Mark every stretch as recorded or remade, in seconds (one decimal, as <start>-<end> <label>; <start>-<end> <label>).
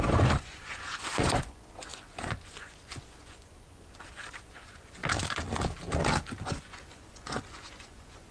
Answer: 0.0-5.0 remade; 5.0-6.4 recorded; 6.4-8.3 remade